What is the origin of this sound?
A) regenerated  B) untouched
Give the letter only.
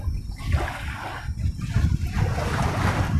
B